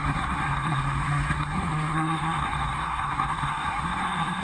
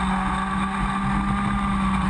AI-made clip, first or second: first